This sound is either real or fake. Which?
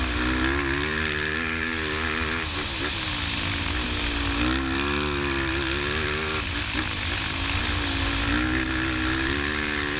real